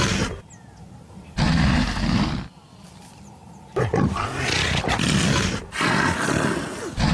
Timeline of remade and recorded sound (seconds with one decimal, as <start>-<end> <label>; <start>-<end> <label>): 0.0-7.1 recorded